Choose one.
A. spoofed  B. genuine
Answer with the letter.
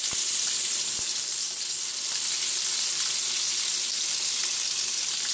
B